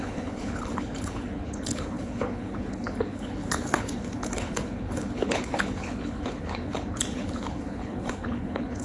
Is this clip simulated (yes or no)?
yes